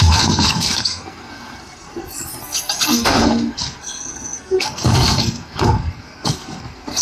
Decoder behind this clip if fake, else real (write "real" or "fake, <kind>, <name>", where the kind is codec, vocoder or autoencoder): fake, codec, SNAC